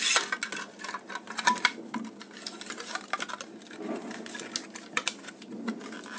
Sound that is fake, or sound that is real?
real